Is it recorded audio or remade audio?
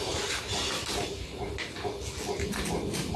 recorded